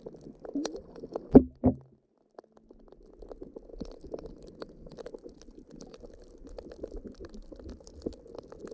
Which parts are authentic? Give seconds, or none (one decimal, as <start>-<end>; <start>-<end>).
0.0-8.7